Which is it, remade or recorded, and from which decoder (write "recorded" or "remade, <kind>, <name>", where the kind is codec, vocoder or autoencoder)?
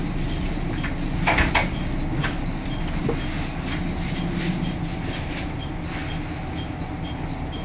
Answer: recorded